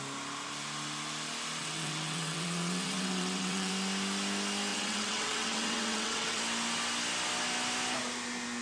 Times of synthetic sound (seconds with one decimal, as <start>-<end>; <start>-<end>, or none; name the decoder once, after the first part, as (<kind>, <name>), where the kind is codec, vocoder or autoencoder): 1.6-3.7 (vocoder, WaveNeXt); 4.7-6.4